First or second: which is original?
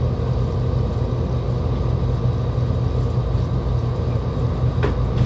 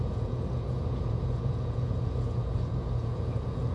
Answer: first